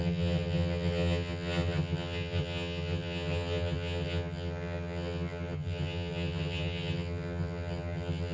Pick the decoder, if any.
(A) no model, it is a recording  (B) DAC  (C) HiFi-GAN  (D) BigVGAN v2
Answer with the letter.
C